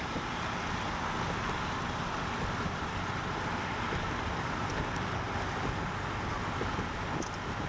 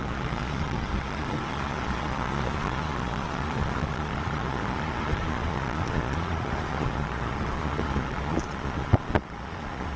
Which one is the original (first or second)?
first